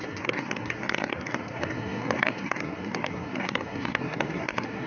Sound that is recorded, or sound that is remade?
remade